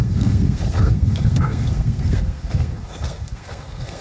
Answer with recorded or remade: remade